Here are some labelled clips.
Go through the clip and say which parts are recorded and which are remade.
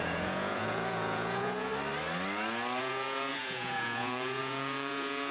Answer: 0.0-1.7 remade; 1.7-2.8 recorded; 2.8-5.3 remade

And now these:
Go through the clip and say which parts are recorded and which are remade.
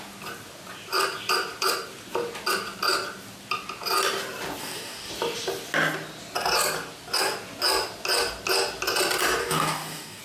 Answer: 0.0-4.6 recorded; 4.6-5.1 remade; 5.1-9.4 recorded; 9.4-10.2 remade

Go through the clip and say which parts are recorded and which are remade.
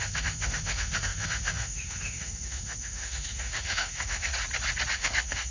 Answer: 0.0-4.3 remade; 4.3-4.9 recorded; 4.9-5.5 remade